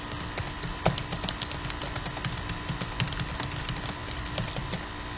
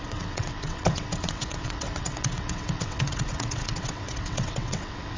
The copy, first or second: second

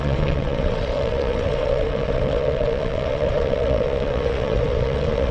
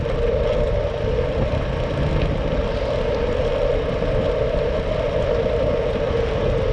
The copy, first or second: first